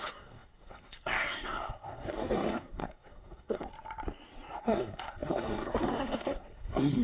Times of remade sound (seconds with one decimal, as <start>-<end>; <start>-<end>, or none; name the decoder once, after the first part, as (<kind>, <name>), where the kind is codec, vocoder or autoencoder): 0.0-3.7 (codec, SNAC); 4.6-7.0